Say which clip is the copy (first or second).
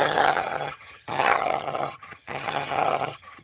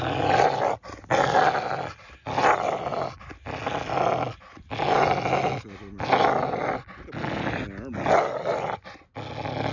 first